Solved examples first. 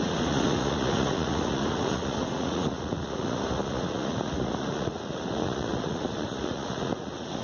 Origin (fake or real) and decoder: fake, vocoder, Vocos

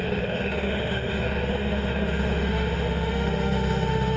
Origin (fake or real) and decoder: fake, autoencoder, DAC-VAE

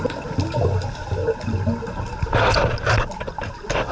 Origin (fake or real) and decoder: real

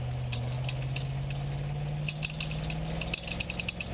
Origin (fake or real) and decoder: real